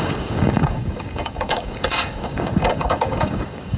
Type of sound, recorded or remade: remade